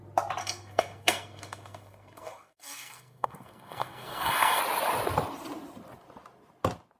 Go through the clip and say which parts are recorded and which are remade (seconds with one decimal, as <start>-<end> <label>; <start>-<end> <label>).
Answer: 0.0-0.4 recorded; 0.4-4.6 remade; 4.6-7.0 recorded